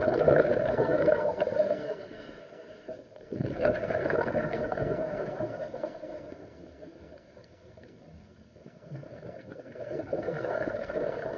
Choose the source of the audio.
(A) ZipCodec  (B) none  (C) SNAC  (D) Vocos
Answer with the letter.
C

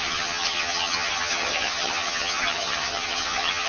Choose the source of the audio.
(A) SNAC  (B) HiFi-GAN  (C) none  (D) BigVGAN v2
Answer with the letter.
B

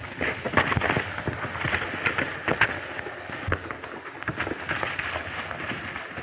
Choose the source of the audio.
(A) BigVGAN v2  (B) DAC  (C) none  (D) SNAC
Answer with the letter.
C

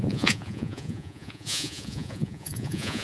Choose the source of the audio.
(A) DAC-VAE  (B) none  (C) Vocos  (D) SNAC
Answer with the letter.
C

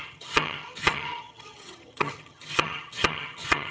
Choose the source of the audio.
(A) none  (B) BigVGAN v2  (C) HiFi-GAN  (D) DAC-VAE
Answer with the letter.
C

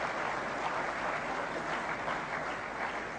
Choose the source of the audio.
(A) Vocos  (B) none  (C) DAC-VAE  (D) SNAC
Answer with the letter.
B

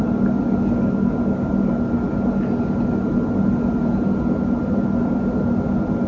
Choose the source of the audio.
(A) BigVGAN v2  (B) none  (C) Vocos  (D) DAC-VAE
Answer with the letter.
B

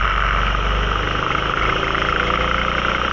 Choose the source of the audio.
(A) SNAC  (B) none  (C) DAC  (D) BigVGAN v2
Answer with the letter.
B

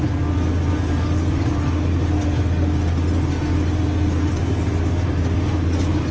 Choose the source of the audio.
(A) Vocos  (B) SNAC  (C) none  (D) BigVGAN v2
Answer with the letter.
C